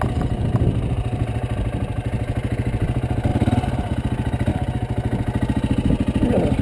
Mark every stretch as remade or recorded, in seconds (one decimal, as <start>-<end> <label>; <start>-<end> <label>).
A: 0.0-6.6 recorded